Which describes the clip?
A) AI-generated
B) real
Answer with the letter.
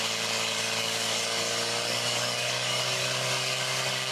A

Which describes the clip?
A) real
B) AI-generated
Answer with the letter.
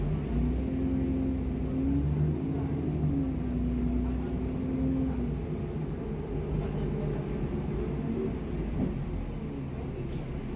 A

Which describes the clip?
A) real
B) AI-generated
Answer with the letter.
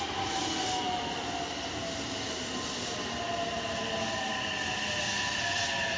A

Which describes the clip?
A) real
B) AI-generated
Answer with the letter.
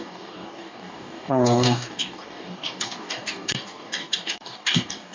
B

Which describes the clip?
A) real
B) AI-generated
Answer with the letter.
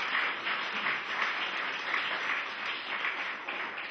A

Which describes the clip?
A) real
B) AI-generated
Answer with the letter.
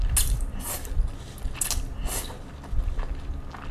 A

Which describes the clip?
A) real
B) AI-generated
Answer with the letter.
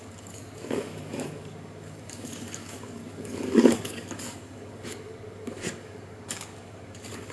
B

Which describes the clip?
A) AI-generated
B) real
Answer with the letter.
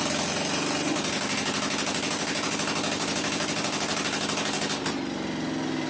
B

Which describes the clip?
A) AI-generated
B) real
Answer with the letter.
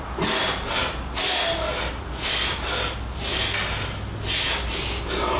B